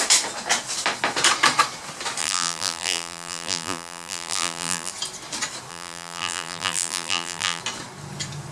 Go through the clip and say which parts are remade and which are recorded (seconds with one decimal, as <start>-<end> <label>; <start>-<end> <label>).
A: 0.0-2.2 recorded; 2.2-4.9 remade; 4.9-5.7 recorded; 5.7-7.6 remade; 7.6-8.5 recorded